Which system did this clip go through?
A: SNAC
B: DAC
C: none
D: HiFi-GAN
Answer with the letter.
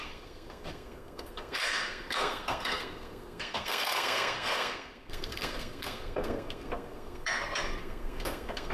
A